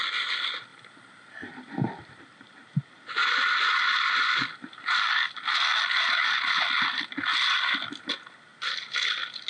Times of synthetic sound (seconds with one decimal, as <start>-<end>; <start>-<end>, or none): 0.7-5.1